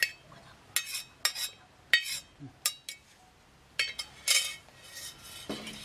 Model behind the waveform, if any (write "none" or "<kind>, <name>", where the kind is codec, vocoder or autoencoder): none